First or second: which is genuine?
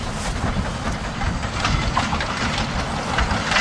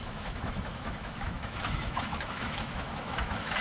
first